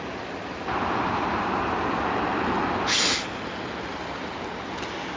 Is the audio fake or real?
real